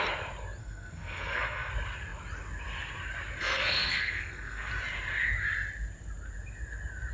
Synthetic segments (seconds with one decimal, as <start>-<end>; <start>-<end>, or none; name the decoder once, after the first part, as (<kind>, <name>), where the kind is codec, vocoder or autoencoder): 0.6-1.7 (codec, SNAC); 3.4-4.7